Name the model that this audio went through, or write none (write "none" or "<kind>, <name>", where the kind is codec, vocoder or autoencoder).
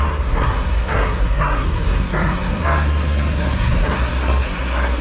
codec, SNAC